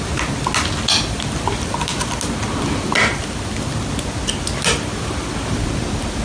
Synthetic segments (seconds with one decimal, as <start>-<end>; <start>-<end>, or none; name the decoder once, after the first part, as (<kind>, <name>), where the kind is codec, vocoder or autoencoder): none